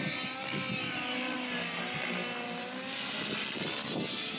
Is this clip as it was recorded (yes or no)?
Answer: yes